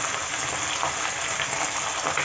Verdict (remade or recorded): recorded